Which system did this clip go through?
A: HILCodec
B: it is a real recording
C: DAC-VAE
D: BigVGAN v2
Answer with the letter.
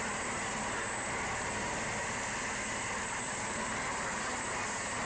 B